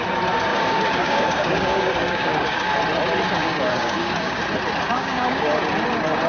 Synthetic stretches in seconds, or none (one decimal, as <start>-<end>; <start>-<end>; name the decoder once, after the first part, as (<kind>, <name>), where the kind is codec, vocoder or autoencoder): 0.5-2.7 (codec, DAC); 3.4-4.4; 4.9-5.5